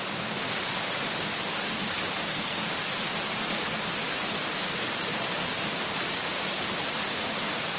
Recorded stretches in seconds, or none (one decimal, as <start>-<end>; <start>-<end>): 0.0-2.2; 2.7-7.8